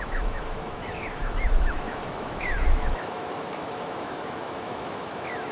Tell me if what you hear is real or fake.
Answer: fake